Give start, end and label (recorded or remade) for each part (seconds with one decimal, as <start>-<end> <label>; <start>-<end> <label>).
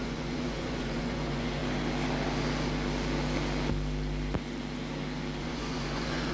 0.0-1.6 remade; 1.6-5.4 recorded; 5.4-6.3 remade